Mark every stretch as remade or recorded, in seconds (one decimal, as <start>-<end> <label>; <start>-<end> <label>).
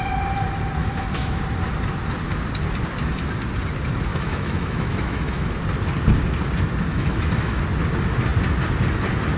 0.0-0.8 recorded; 0.8-1.4 remade; 1.4-4.1 recorded; 4.1-5.5 remade; 5.5-6.9 recorded; 6.9-7.6 remade; 7.6-9.4 recorded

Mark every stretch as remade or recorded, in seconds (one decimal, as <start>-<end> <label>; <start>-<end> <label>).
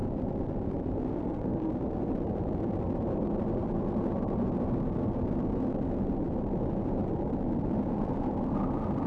0.0-1.1 recorded; 1.1-1.7 remade; 1.7-9.1 recorded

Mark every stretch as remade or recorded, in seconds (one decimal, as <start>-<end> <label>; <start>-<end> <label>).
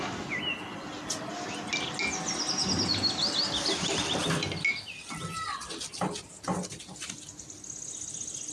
0.0-8.5 recorded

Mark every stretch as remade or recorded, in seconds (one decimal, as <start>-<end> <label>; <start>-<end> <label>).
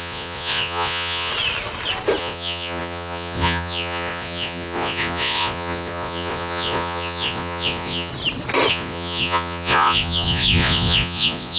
0.0-1.3 remade; 1.3-2.2 recorded; 2.2-8.1 remade; 8.1-8.7 recorded; 8.7-11.6 remade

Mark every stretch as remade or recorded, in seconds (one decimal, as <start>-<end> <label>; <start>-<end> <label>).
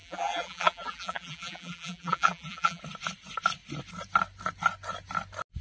0.0-2.8 remade; 2.8-5.6 recorded